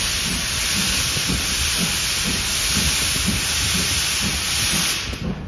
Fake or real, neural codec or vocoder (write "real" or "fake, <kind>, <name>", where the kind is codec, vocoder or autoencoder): real